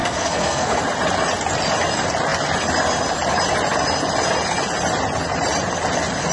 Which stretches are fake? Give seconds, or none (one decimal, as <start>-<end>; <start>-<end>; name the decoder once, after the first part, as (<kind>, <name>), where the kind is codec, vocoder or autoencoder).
0.0-0.8 (codec, SNAC)